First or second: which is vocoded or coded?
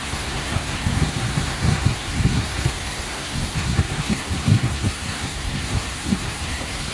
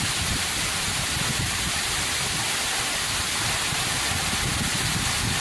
first